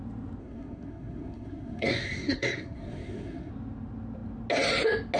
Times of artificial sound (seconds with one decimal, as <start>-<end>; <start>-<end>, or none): 0.4-3.5

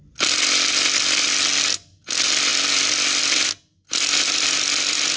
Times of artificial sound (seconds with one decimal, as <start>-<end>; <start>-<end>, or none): none